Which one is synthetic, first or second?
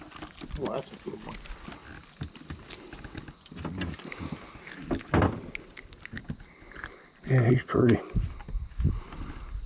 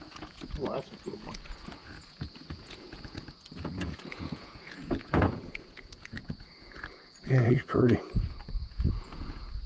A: second